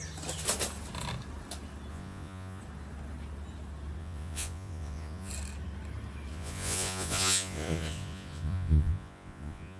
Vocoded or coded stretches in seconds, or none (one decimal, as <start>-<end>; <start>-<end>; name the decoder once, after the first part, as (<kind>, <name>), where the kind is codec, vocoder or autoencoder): 1.9-2.6 (vocoder, Vocos); 4.0-5.3; 6.3-9.8